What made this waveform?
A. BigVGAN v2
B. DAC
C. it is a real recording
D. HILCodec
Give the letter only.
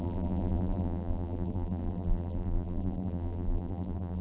A